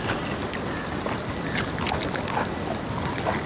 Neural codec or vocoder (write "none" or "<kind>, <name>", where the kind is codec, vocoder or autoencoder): none